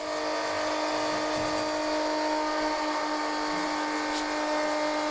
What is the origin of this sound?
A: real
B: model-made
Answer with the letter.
A